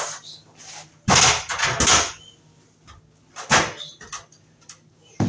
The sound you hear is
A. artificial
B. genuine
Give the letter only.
B